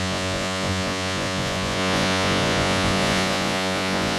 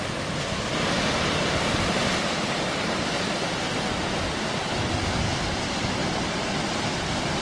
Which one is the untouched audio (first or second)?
second